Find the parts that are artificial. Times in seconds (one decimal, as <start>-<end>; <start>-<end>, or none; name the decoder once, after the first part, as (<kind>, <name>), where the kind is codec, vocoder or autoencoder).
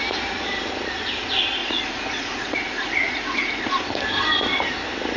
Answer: 1.6-3.8 (vocoder, Vocos)